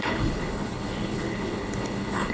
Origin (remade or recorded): remade